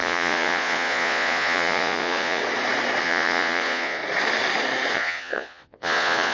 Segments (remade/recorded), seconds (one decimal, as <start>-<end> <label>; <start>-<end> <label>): 0.0-2.4 remade; 2.4-3.0 recorded; 3.0-4.0 remade; 4.0-4.9 recorded; 4.9-6.3 remade